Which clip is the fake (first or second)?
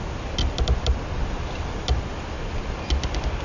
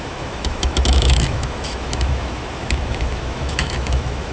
second